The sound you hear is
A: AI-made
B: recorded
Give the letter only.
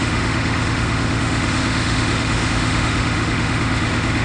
A